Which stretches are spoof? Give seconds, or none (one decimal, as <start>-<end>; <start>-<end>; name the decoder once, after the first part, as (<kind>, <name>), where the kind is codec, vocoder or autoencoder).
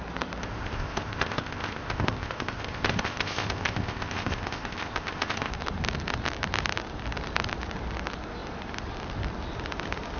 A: 0.4-5.5 (codec, ZipCodec)